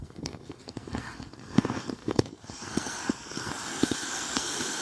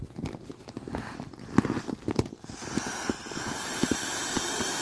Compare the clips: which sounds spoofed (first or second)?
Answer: first